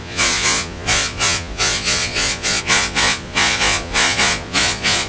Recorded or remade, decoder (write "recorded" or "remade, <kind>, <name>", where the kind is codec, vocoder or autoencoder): remade, vocoder, Vocos